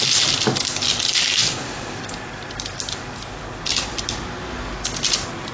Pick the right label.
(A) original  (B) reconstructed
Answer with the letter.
A